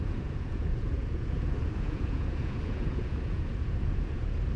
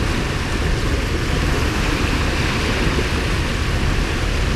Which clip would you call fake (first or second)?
first